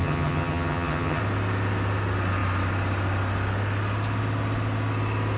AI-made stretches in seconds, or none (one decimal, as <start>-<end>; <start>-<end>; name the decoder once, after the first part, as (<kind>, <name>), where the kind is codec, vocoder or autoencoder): 0.0-1.2 (vocoder, HiFi-GAN)